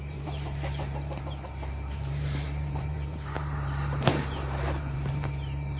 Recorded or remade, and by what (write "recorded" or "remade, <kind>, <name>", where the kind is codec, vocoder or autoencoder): remade, vocoder, BigVGAN v2